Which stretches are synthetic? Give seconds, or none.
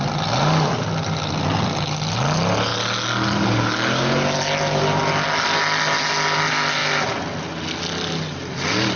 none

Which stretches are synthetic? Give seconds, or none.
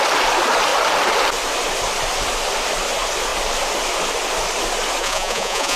5.0-5.8 (vocoder, Vocos)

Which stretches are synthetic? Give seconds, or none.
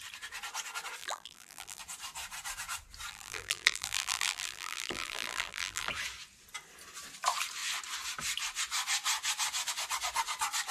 1.0-1.8 (vocoder, BigVGAN v2); 3.1-5.9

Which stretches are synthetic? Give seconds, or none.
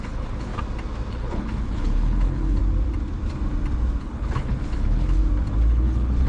0.0-0.5 (codec, HILCodec); 1.1-2.6; 4.0-5.2; 5.7-6.3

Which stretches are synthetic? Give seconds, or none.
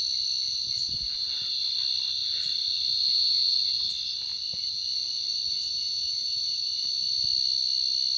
2.2-2.9 (vocoder, BigVGAN v2); 4.3-5.7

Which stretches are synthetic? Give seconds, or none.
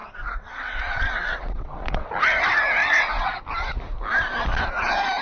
0.0-2.1 (vocoder, WaveNeXt); 2.8-3.4